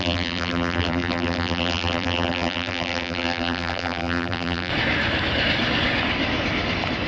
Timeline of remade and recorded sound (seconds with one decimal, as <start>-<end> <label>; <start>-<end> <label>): 0.0-4.7 remade; 4.7-7.1 recorded